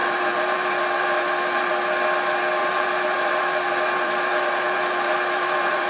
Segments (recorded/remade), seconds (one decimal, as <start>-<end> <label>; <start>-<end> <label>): 0.0-1.7 remade; 1.7-2.6 recorded; 2.6-5.9 remade